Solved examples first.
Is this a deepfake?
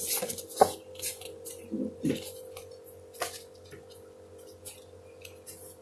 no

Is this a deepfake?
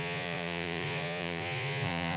yes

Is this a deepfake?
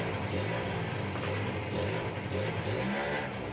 no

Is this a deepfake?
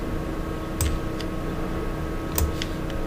no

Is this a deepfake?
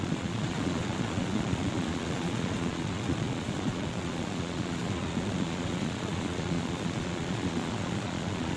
yes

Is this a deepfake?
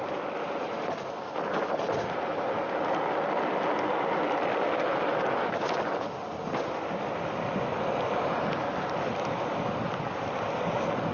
no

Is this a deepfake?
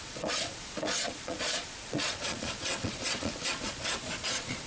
yes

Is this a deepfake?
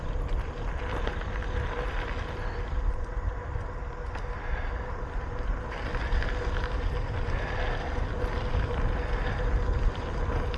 no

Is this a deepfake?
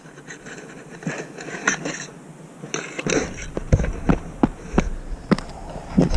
no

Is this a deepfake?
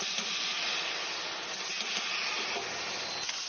no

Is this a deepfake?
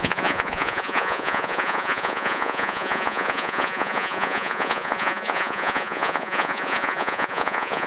yes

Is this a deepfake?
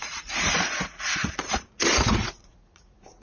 yes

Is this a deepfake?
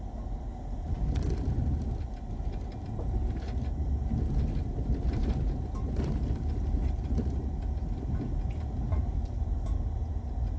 no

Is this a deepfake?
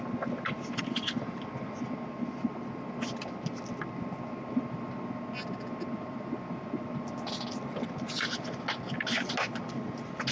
no